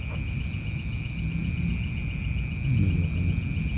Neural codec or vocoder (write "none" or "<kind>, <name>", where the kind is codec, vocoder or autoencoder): none